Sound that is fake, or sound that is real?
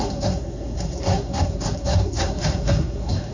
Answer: fake